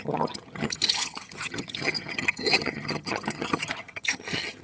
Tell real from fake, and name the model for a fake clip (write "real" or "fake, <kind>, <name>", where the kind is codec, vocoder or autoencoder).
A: fake, vocoder, HiFi-GAN